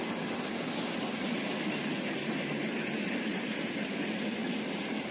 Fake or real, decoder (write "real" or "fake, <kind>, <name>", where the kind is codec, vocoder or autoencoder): real